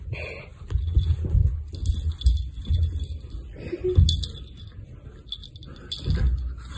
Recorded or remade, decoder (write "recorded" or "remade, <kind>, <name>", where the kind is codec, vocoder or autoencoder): recorded